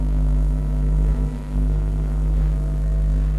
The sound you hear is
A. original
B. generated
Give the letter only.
B